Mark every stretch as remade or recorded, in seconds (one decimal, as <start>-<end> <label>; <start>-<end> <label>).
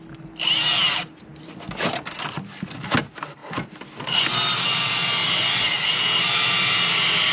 0.0-7.3 recorded